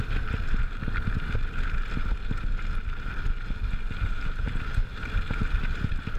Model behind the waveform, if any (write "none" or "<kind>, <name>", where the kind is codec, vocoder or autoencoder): none